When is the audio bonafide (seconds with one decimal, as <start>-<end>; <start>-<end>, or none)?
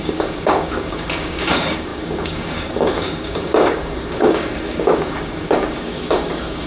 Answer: none